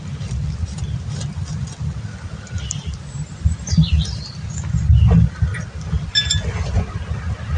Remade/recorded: recorded